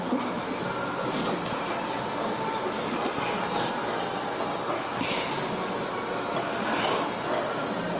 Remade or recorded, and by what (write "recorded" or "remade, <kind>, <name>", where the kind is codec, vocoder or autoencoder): recorded